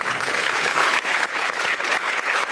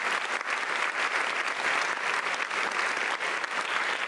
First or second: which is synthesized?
first